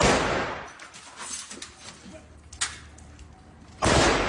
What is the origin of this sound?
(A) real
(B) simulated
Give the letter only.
A